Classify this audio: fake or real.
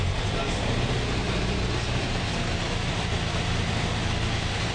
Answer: fake